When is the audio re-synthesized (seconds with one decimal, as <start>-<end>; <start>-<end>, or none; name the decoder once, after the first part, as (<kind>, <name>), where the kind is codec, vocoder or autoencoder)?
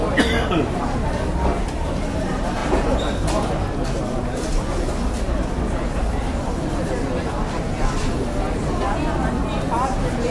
none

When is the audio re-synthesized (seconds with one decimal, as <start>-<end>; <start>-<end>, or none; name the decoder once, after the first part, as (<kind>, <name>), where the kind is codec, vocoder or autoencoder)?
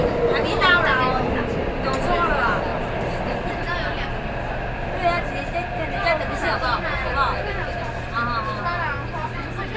none